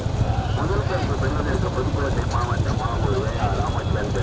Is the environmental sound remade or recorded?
recorded